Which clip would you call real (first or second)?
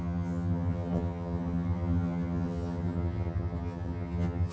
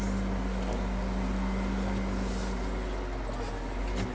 second